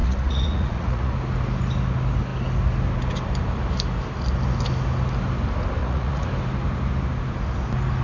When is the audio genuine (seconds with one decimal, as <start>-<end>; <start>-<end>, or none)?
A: 1.1-5.8; 6.3-8.0